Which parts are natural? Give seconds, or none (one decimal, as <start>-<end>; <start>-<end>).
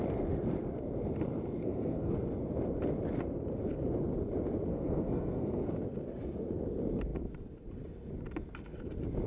0.0-1.6; 2.1-4.7; 5.7-9.3